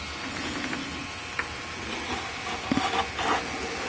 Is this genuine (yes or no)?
yes